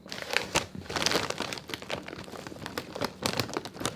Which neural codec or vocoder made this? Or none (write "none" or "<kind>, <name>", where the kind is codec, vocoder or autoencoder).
none